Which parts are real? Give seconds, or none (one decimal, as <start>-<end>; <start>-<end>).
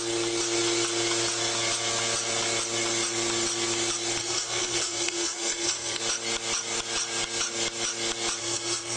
0.0-4.2; 6.0-8.4